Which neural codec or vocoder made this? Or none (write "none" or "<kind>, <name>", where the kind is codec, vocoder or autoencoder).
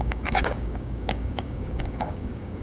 codec, DAC